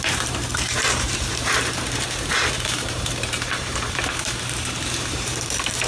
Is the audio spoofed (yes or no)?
yes